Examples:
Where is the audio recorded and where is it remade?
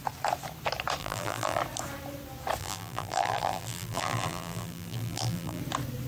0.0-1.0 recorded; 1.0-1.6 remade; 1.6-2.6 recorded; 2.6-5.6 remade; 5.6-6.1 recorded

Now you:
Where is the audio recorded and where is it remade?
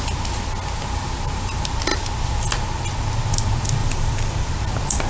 0.0-3.8 recorded; 3.8-4.5 remade; 4.5-5.1 recorded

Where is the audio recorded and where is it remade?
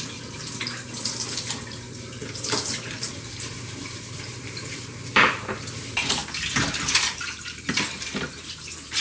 0.0-6.2 remade; 6.2-6.9 recorded; 6.9-9.0 remade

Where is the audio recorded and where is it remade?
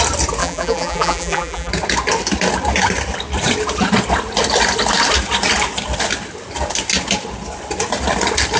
0.0-0.4 recorded; 0.4-1.7 remade; 1.7-8.6 recorded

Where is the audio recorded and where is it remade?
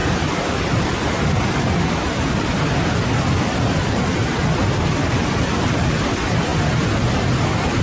0.0-7.8 recorded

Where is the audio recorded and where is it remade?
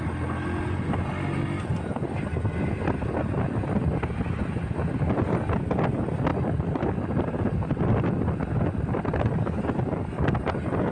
0.0-6.3 recorded; 6.3-9.2 remade; 9.2-10.9 recorded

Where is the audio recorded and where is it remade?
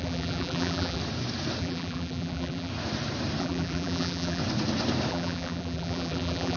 0.0-1.0 remade; 1.0-1.6 recorded; 1.6-2.7 remade; 2.7-3.4 recorded; 3.4-4.4 remade; 4.4-5.1 recorded; 5.1-6.6 remade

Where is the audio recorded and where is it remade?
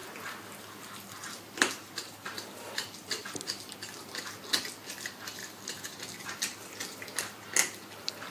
0.0-5.4 recorded; 5.4-7.2 remade; 7.2-8.3 recorded